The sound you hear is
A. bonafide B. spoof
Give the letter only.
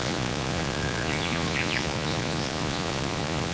B